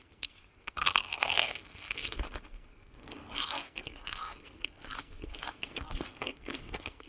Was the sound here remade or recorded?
remade